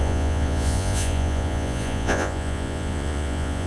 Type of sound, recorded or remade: remade